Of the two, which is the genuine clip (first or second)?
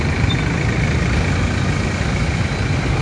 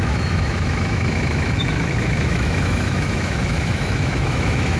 first